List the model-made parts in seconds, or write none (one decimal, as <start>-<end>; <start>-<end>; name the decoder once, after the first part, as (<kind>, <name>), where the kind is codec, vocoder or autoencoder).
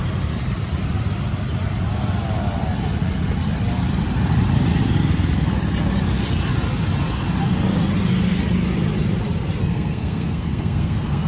9.6-11.3 (codec, SNAC)